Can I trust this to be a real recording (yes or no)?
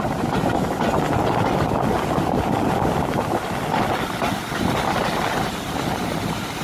yes